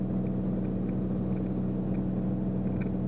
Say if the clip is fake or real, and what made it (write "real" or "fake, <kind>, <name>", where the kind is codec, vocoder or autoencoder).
real